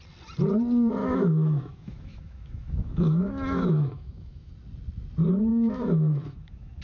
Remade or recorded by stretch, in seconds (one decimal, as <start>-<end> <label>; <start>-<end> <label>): 0.0-1.0 recorded; 1.0-4.5 remade; 4.5-5.5 recorded; 5.5-6.8 remade